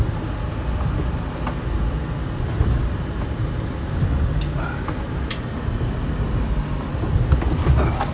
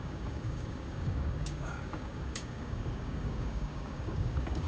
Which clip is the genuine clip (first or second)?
first